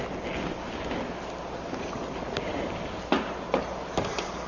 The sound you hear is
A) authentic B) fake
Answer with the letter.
A